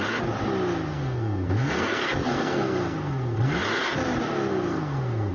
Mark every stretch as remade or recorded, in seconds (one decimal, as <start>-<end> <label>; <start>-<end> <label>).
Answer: 0.0-0.9 recorded; 0.9-3.6 remade; 3.6-4.5 recorded; 4.5-5.3 remade